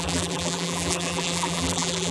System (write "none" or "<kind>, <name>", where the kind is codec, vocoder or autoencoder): vocoder, BigVGAN v2